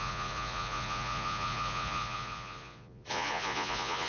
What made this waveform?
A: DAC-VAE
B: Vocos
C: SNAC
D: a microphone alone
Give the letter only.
B